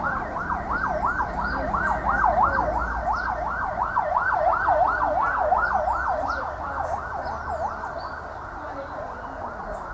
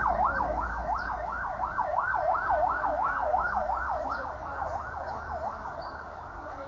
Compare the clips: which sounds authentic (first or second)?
first